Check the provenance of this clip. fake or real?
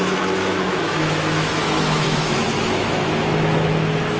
fake